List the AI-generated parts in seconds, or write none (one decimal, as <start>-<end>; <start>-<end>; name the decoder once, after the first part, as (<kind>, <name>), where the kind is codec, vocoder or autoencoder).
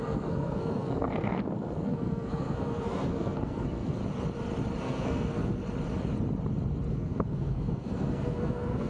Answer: 0.0-4.0 (codec, SNAC); 4.8-5.6; 6.9-8.9